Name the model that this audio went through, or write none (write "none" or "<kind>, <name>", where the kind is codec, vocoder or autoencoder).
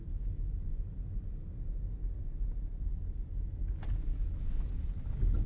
none